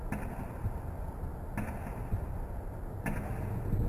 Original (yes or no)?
yes